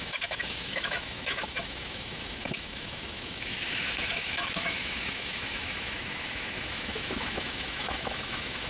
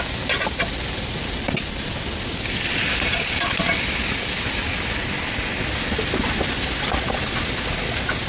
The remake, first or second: first